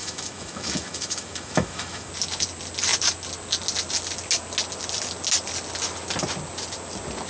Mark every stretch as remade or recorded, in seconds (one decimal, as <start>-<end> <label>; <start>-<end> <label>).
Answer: 0.0-2.1 remade; 2.1-7.3 recorded